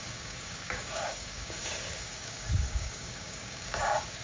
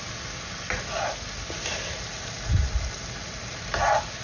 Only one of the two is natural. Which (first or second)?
second